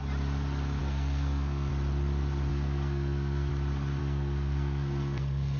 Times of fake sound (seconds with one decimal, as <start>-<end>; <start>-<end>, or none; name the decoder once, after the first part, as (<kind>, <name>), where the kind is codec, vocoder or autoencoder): 0.8-1.7 (codec, SNAC); 2.5-3.5; 4.0-5.6